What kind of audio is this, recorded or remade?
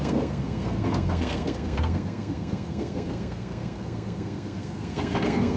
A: remade